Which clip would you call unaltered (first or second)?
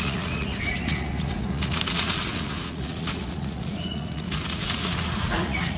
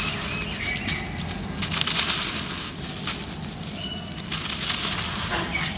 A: second